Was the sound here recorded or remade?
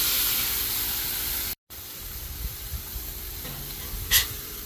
recorded